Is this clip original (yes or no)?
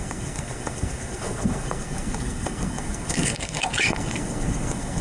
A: no